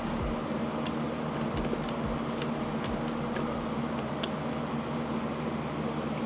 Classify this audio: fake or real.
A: real